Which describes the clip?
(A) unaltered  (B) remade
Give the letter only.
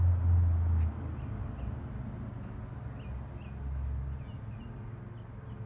A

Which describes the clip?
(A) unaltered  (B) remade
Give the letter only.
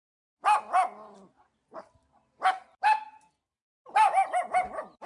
A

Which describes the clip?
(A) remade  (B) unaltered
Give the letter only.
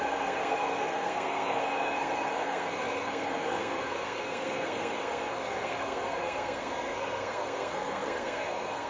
A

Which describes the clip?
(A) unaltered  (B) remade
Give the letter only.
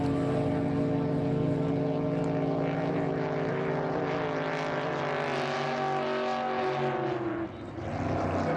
A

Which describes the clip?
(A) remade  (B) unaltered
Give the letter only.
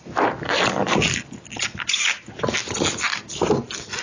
B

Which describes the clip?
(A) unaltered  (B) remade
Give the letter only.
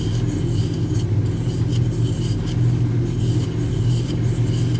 A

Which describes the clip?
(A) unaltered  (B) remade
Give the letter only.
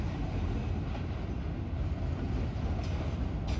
A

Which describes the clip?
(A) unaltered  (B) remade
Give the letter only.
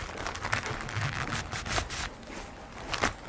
A